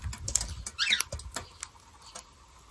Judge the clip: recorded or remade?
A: recorded